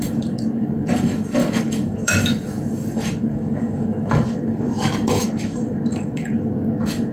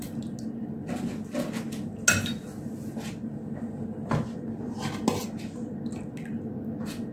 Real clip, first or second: second